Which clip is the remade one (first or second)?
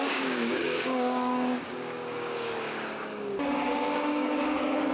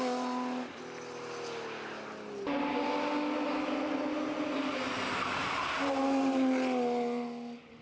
first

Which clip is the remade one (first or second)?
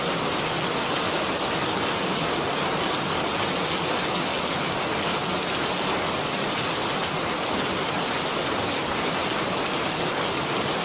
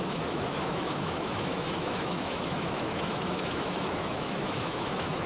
second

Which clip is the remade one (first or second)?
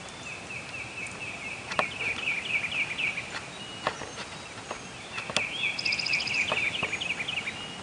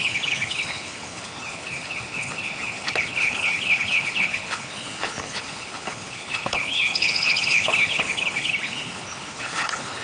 second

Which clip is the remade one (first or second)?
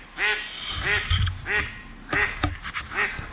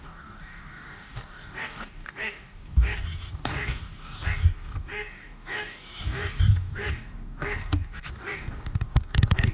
second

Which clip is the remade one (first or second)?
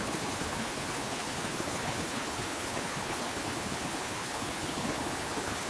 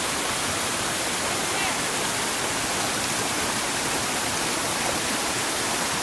first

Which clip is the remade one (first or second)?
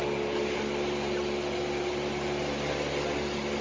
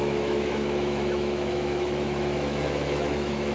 second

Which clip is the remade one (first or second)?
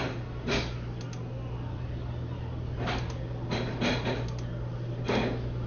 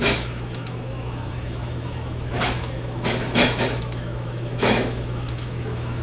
second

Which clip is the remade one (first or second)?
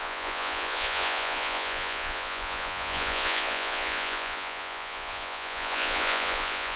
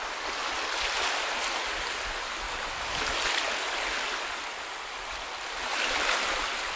first